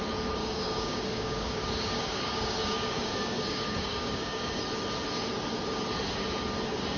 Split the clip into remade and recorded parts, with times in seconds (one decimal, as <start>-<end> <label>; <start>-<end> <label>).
0.0-0.4 recorded; 0.4-4.6 remade; 4.6-7.0 recorded